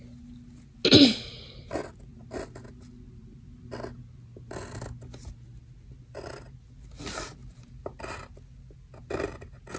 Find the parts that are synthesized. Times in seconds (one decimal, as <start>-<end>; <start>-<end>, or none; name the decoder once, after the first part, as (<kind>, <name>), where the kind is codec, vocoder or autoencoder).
7.4-8.1 (vocoder, BigVGAN v2)